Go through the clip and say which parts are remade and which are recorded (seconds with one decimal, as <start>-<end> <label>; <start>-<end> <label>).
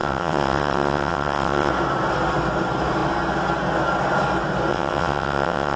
0.0-1.7 remade; 1.7-4.7 recorded; 4.7-5.8 remade